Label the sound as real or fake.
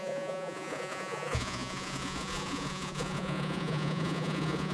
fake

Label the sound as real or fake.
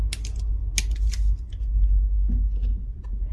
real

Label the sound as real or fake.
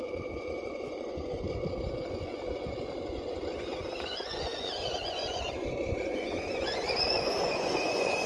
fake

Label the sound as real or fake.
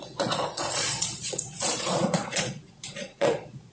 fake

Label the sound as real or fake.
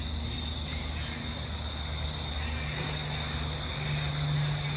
real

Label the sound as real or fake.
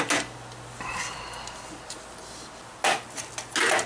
real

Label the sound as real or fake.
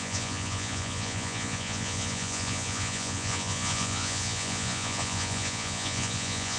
fake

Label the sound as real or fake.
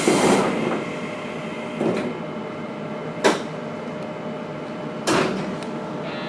real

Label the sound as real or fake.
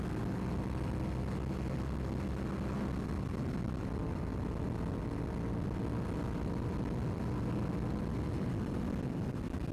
real